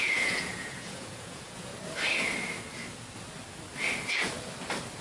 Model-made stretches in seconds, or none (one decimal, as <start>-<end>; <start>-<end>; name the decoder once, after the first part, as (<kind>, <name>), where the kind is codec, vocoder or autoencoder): 0.0-1.7 (vocoder, Vocos)